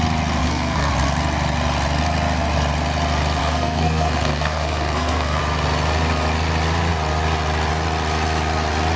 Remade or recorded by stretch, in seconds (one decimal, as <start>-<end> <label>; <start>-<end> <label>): 0.0-0.4 recorded; 0.4-0.9 remade; 0.9-3.4 recorded; 3.4-5.4 remade; 5.4-9.0 recorded